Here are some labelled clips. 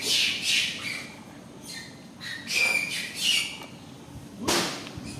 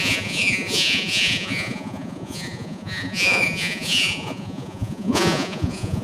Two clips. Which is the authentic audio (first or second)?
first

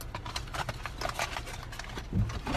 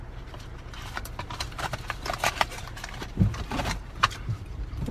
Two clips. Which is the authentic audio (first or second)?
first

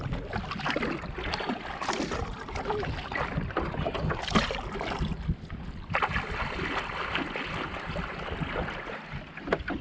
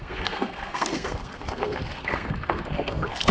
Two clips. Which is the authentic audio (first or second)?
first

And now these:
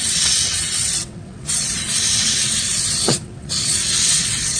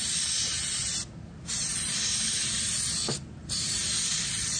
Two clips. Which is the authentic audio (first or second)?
second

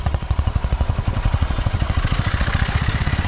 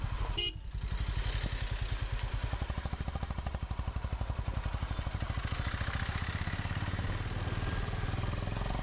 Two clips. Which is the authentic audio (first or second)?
second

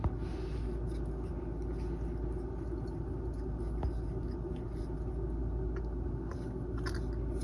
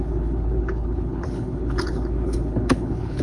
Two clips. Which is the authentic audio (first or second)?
first